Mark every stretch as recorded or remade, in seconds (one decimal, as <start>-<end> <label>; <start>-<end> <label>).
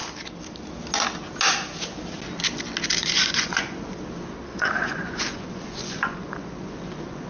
0.0-3.0 recorded; 3.0-4.0 remade; 4.0-4.5 recorded; 4.5-7.3 remade